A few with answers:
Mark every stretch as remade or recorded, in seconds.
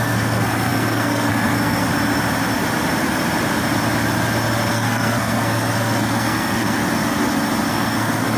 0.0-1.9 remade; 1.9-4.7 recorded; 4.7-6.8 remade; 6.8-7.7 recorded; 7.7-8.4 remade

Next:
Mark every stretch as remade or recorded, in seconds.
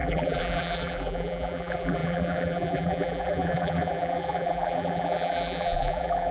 0.0-6.3 remade